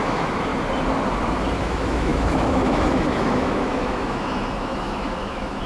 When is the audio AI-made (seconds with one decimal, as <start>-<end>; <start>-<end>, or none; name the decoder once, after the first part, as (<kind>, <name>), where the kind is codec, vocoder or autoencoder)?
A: 0.0-0.5 (autoencoder, DAC-VAE); 1.6-5.7